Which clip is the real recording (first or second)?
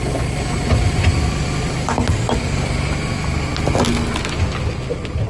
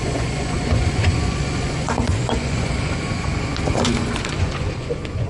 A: first